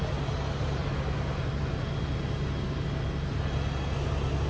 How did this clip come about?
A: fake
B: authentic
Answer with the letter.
B